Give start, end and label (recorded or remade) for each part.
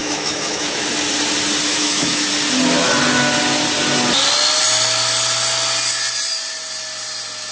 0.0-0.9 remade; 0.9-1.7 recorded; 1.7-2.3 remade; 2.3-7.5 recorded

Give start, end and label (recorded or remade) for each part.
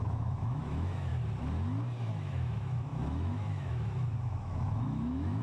0.0-1.1 remade; 1.1-2.0 recorded; 2.0-5.4 remade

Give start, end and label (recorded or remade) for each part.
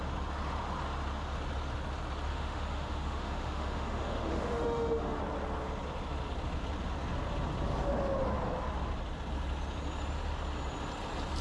0.0-2.3 recorded; 2.3-5.2 remade; 5.2-11.4 recorded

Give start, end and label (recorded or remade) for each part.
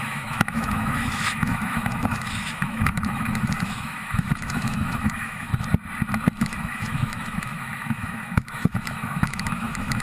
0.0-5.5 remade; 5.5-6.4 recorded; 6.4-10.0 remade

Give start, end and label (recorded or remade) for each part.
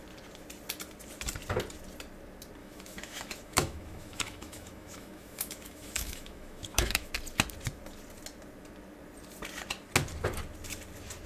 0.0-2.6 recorded; 2.6-7.1 remade; 7.1-11.3 recorded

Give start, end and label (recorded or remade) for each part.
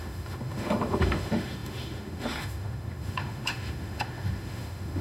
0.0-5.0 remade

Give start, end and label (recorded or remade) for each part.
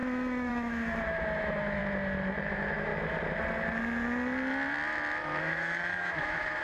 0.0-1.8 remade; 1.8-2.5 recorded; 2.5-2.9 remade; 2.9-5.4 recorded; 5.4-6.6 remade